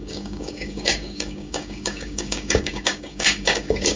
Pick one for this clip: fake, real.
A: fake